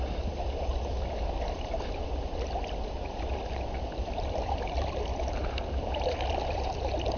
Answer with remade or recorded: remade